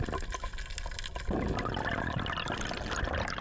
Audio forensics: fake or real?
real